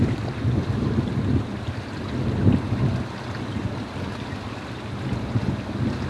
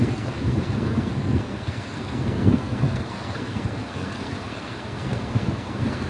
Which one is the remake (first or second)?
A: second